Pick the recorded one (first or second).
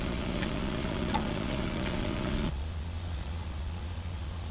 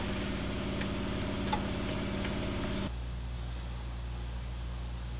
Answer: second